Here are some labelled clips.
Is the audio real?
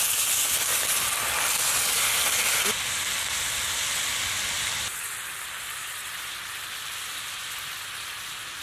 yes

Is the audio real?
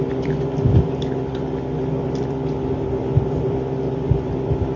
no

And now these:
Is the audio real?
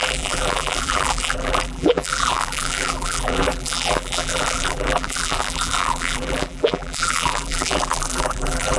no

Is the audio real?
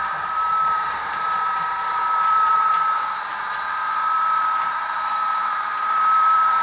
no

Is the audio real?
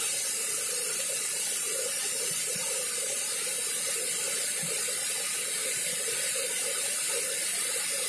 no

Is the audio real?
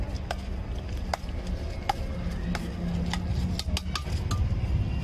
yes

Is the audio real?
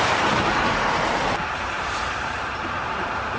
no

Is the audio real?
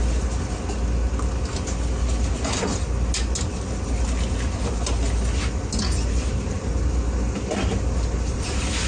yes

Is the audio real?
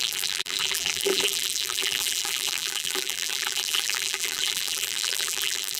no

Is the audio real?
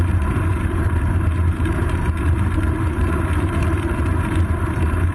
no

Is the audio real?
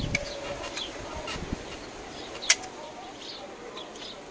yes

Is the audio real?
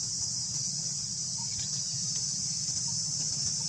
yes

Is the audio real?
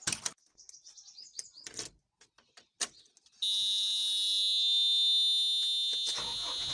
yes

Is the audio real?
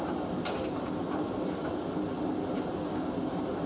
yes